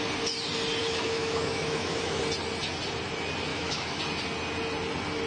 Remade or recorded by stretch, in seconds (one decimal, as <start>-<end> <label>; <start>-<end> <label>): 0.0-0.8 recorded; 0.8-2.2 remade; 2.2-3.5 recorded; 3.5-4.0 remade; 4.0-5.3 recorded

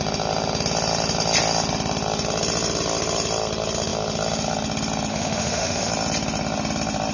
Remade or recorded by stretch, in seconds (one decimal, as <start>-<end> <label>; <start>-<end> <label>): 0.0-5.1 recorded; 5.1-5.9 remade; 5.9-7.1 recorded